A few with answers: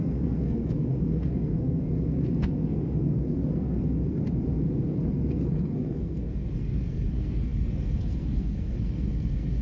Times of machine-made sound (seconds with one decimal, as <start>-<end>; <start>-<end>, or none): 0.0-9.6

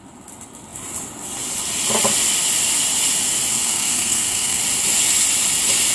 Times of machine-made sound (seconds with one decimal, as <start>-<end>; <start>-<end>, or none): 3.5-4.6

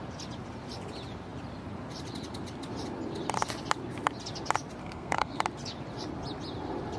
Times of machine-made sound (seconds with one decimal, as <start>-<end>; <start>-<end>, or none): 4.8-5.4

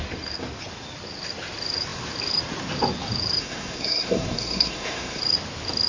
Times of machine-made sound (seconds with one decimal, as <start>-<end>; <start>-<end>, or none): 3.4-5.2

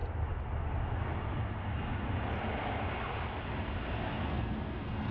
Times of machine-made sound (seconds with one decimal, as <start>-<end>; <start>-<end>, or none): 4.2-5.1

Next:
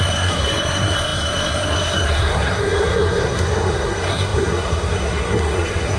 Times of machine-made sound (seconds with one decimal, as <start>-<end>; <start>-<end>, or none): 0.0-6.0